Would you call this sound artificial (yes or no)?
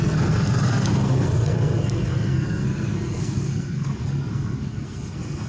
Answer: yes